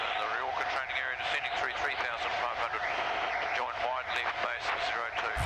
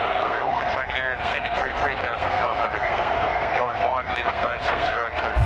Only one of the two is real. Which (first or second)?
first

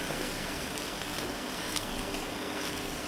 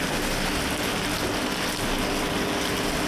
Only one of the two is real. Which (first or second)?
second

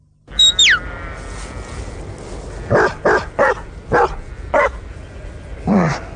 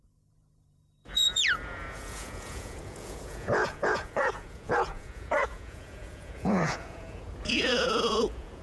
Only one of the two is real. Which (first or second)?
first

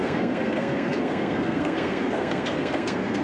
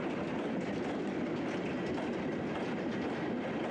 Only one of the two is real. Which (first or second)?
second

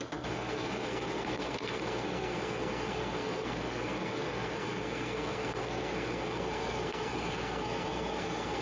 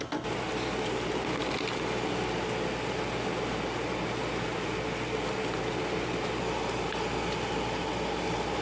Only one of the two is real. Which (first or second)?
second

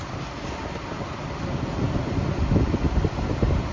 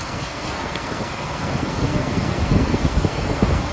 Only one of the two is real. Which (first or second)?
first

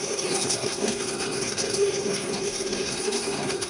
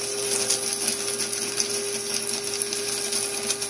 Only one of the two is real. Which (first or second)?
second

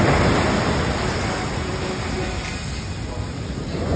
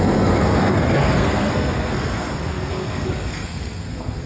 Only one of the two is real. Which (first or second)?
first